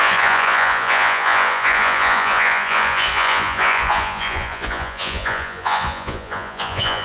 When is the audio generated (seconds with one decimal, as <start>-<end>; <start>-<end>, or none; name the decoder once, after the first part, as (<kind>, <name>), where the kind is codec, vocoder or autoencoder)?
0.0-7.0 (vocoder, Vocos)